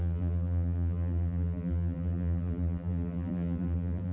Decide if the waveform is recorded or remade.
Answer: remade